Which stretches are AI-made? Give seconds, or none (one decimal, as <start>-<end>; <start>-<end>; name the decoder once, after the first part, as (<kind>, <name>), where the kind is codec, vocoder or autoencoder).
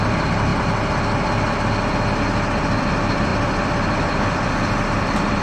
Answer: 0.0-0.5 (vocoder, BigVGAN v2); 2.8-5.4